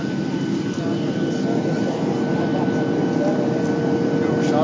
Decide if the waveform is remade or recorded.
recorded